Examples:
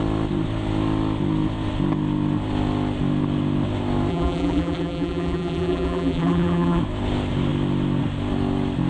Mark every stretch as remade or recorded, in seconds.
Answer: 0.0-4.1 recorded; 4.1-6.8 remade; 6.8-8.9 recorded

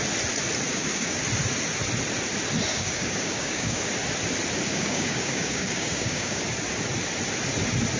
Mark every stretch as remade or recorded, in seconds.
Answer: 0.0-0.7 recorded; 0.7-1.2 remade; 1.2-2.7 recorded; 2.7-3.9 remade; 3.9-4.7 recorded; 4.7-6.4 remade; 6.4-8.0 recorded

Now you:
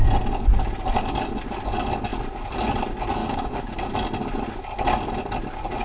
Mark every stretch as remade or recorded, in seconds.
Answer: 0.0-3.2 recorded; 3.2-3.8 remade; 3.8-5.8 recorded

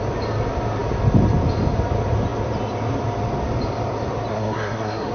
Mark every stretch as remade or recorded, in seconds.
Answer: 0.0-4.3 recorded; 4.3-5.1 remade